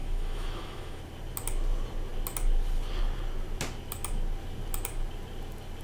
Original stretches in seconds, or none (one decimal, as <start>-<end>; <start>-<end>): 1.0-5.8